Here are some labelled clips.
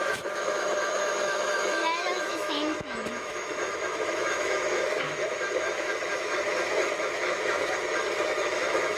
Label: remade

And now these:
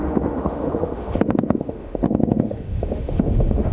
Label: remade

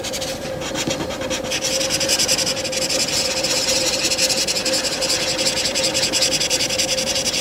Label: recorded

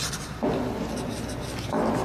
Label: recorded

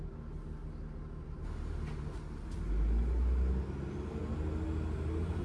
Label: recorded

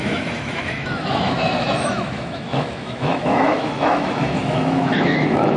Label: remade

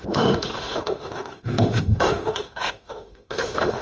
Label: remade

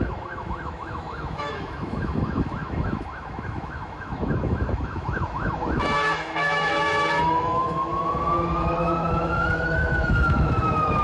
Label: remade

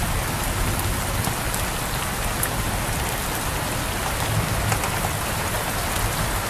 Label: recorded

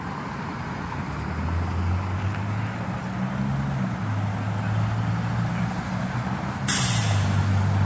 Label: recorded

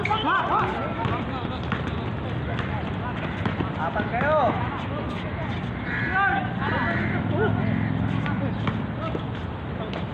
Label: recorded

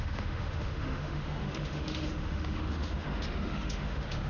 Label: remade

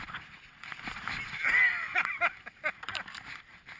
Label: recorded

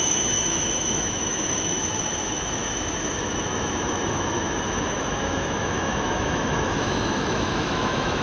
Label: remade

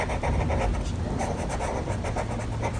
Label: recorded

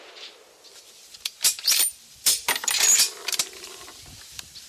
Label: recorded